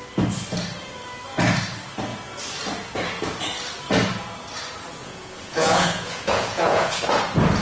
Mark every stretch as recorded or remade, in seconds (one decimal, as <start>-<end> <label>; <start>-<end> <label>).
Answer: 0.0-5.0 recorded; 5.0-7.0 remade; 7.0-7.6 recorded